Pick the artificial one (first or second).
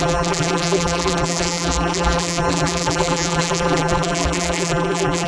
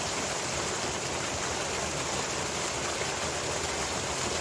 first